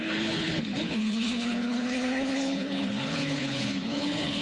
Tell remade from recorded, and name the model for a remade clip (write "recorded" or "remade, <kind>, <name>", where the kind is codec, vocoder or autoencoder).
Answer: remade, codec, HILCodec